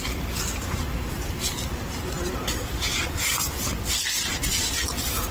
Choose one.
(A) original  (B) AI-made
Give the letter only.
A